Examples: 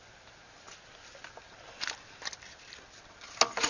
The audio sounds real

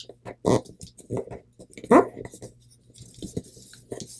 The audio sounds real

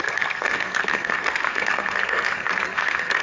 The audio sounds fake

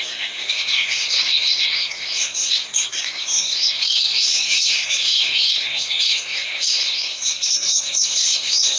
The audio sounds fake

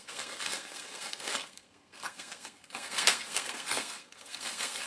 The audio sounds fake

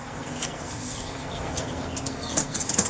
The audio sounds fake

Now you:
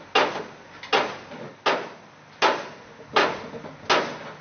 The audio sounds real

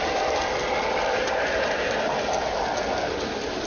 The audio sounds real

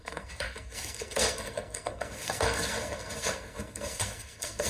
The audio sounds fake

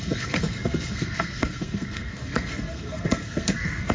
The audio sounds fake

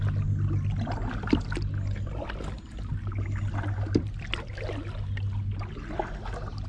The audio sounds real